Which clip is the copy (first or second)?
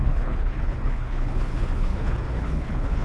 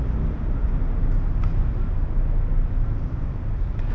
first